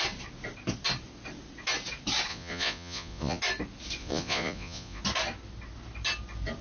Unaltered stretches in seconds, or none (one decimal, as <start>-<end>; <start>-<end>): 0.0-2.3; 3.4-4.0; 5.0-6.6